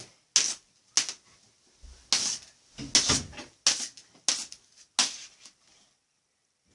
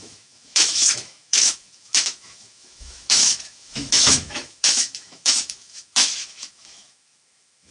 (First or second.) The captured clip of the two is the first